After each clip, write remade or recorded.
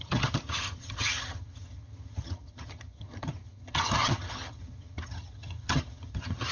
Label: remade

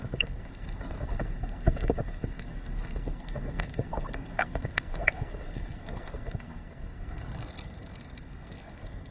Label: remade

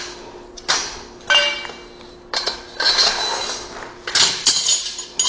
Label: recorded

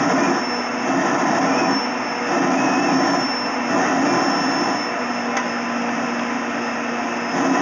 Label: recorded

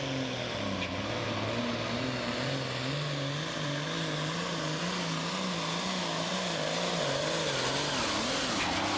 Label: recorded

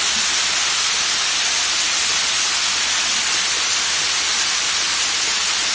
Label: recorded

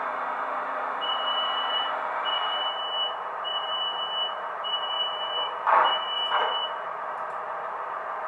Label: remade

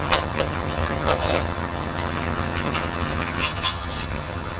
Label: remade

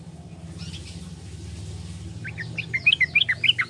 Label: recorded